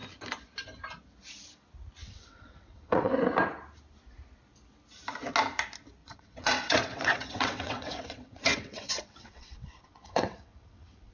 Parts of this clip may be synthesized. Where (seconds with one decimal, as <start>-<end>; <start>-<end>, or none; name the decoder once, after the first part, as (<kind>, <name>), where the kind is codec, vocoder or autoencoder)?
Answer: 2.0-3.1 (vocoder, WaveNeXt); 6.0-11.1

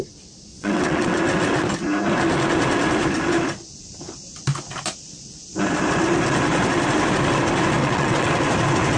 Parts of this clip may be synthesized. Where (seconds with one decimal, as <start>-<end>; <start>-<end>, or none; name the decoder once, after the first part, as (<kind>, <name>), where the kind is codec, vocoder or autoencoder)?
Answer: 0.5-1.2 (vocoder, WaveNeXt); 7.8-8.3

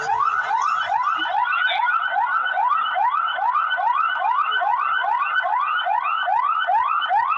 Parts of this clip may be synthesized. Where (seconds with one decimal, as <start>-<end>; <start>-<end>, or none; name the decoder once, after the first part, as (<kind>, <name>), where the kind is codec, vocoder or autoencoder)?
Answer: none

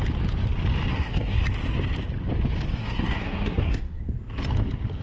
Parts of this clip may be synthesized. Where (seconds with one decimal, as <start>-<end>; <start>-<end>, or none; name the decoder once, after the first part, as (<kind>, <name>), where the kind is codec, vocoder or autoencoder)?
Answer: 0.9-1.4 (codec, SNAC); 2.7-4.0